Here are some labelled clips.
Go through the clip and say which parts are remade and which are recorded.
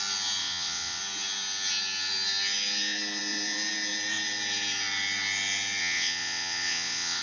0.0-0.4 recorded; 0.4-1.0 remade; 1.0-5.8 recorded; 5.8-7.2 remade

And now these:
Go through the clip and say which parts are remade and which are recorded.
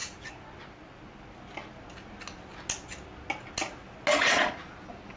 0.0-4.1 recorded; 4.1-4.7 remade; 4.7-5.2 recorded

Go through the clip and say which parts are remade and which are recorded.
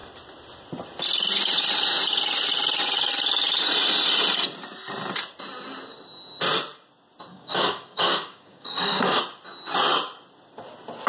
0.0-7.3 recorded; 7.3-9.2 remade; 9.2-11.1 recorded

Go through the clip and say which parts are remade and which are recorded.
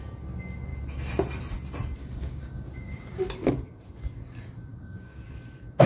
0.0-2.0 recorded; 2.0-3.2 remade; 3.2-4.7 recorded; 4.7-5.3 remade; 5.3-5.9 recorded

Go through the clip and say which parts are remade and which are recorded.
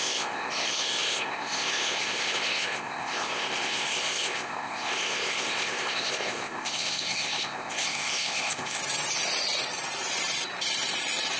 0.0-8.8 remade; 8.8-11.4 recorded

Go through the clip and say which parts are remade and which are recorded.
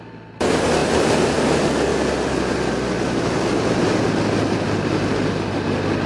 0.0-6.1 recorded